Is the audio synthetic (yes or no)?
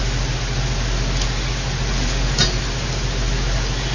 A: no